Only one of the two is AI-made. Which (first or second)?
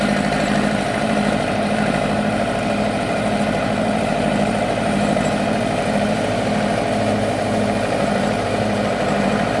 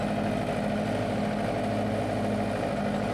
first